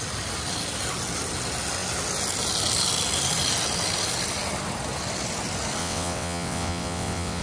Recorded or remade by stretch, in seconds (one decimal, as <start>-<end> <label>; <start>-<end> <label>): 0.0-5.8 recorded; 5.8-7.4 remade